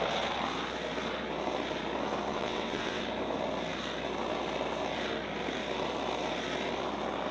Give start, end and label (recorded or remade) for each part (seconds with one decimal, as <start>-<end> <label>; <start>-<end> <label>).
0.0-2.3 recorded; 2.3-3.0 remade; 3.0-7.3 recorded